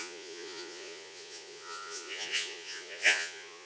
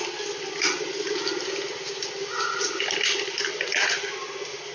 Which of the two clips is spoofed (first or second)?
first